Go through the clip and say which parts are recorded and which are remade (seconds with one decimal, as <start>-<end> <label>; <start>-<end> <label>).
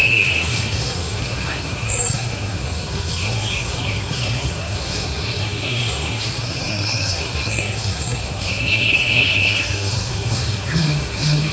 0.0-11.5 remade